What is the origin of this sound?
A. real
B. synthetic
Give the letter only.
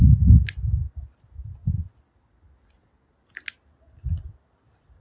A